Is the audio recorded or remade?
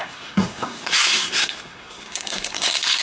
remade